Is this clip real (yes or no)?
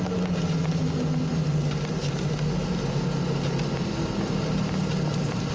yes